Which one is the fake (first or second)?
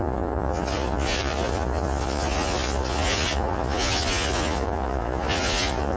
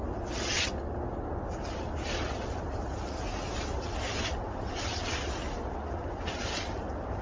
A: first